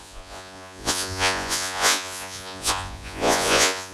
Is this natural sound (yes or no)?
no